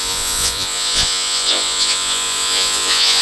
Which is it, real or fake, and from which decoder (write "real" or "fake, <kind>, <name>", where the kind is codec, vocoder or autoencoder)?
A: fake, vocoder, Vocos